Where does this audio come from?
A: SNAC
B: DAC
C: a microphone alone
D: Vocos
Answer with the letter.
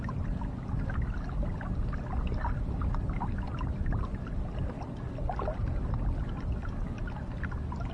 C